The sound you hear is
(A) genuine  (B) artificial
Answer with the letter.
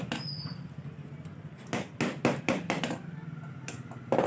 A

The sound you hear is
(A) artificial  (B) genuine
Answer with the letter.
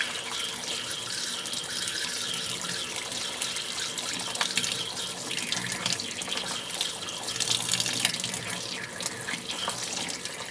B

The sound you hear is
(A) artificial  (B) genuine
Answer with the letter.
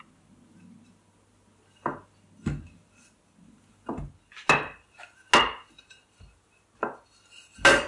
B